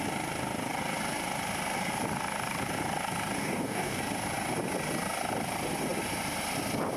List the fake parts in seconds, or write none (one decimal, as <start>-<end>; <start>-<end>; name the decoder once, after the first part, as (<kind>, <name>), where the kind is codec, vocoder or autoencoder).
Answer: 3.4-4.0 (codec, DAC)